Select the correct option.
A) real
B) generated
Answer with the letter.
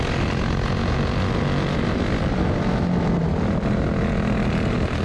A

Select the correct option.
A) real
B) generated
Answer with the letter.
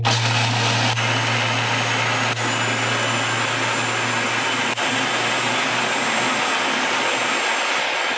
A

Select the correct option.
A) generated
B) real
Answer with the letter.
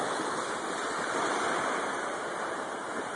B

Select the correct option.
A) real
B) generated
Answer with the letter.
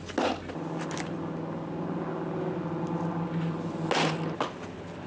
A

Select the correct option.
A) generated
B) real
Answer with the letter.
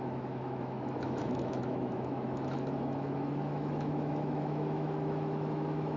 A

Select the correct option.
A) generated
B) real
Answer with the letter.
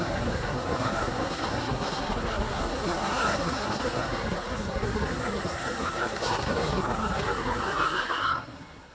A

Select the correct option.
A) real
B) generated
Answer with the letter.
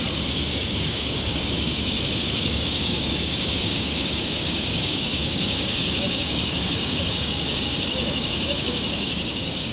B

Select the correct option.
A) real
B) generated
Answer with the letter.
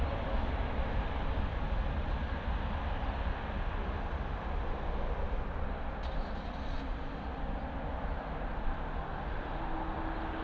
A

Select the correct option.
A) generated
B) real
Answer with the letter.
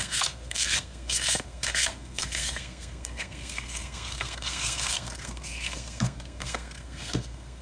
A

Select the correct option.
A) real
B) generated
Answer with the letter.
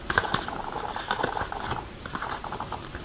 B